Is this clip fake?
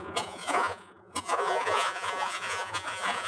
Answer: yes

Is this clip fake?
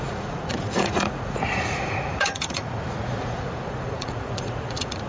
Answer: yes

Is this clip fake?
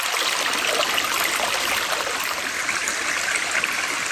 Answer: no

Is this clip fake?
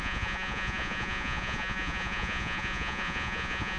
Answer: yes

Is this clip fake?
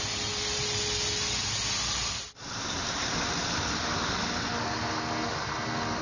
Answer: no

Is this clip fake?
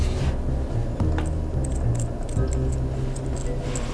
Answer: no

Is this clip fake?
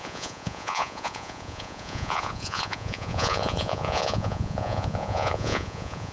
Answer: yes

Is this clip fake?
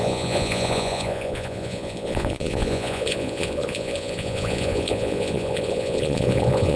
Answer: yes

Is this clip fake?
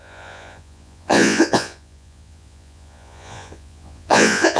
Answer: yes